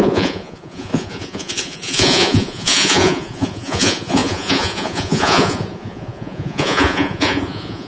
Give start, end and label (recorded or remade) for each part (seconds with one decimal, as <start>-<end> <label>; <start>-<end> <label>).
0.0-7.9 remade

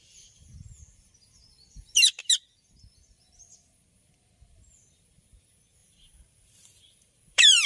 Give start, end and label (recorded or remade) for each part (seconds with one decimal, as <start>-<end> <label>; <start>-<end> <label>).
0.0-5.8 recorded; 5.8-7.7 remade

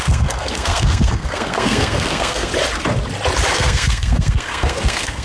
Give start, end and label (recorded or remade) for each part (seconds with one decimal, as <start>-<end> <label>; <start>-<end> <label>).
0.0-2.5 remade; 2.5-3.5 recorded; 3.5-5.2 remade

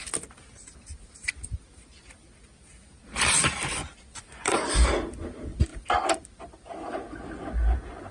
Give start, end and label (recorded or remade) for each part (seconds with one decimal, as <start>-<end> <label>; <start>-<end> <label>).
0.0-3.8 recorded; 3.8-4.7 remade; 4.7-8.1 recorded

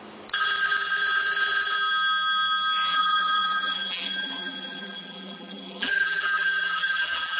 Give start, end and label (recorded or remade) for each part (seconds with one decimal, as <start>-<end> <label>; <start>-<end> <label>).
0.0-2.9 recorded; 2.9-7.4 remade

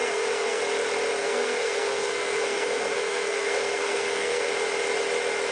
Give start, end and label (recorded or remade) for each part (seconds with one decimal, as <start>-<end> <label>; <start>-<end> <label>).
0.0-0.6 remade; 0.6-1.2 recorded; 1.2-4.5 remade; 4.5-5.5 recorded

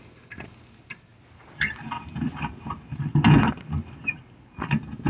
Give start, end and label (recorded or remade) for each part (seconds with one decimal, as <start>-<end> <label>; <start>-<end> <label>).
0.0-5.1 recorded